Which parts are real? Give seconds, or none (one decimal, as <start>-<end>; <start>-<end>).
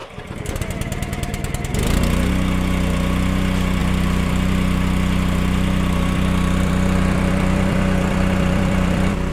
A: 0.0-3.8